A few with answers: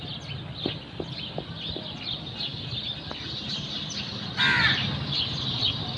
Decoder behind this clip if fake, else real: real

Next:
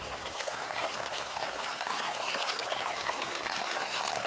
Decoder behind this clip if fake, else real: fake, codec, SNAC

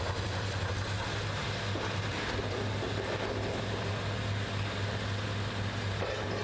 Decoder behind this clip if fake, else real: real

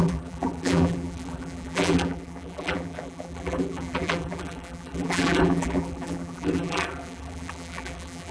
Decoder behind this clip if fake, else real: fake, vocoder, BigVGAN v2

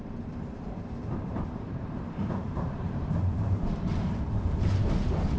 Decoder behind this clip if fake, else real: fake, vocoder, BigVGAN v2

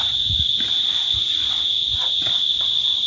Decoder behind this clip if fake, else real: real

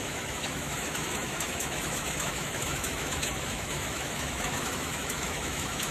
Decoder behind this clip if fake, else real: fake, autoencoder, DAC-VAE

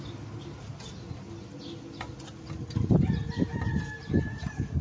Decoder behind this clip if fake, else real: real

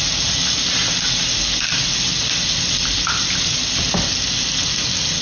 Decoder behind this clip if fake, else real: real